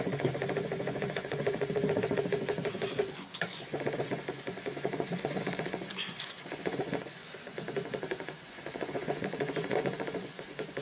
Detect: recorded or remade remade